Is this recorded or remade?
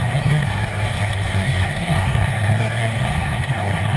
remade